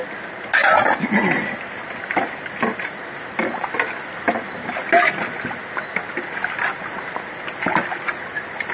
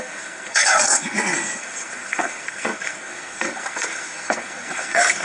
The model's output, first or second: second